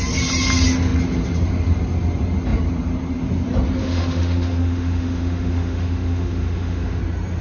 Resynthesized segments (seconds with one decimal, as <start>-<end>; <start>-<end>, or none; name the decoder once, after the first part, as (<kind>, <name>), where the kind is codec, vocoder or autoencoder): 3.8-7.0 (autoencoder, DAC-VAE)

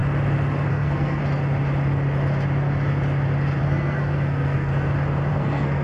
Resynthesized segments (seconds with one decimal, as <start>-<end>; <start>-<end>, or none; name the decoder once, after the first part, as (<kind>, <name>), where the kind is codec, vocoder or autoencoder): 0.7-1.2 (codec, SNAC); 3.6-4.7; 5.3-5.8

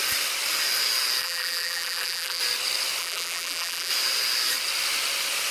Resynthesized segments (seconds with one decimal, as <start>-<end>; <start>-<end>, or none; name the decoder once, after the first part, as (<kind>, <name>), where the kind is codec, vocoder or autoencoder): 1.2-2.4 (vocoder, BigVGAN v2); 3.0-3.9

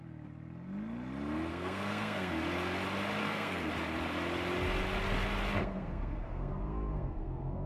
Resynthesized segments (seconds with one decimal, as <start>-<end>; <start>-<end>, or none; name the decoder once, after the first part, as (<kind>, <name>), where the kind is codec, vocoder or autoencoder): 1.5-2.3 (codec, SNAC); 3.2-3.7; 5.6-7.7

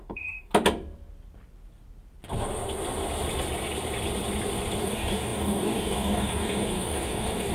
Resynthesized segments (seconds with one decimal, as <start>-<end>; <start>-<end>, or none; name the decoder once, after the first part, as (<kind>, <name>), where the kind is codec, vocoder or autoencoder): 0.0-0.5 (codec, DAC); 4.8-7.5

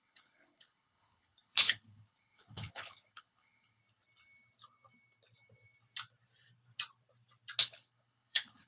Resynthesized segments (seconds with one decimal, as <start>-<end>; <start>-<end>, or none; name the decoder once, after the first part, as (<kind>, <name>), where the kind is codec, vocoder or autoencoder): 0.0-3.8 (codec, HILCodec); 7.6-8.7

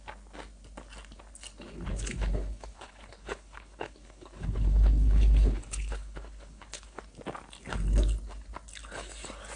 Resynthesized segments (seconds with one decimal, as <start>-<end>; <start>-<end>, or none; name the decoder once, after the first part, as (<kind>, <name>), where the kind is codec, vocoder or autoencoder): 1.9-7.0 (codec, HILCodec)

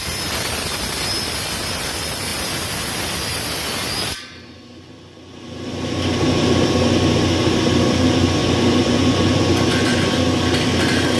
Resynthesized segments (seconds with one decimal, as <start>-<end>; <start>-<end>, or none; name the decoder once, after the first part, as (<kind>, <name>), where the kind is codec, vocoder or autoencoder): 8.4-10.1 (vocoder, Vocos)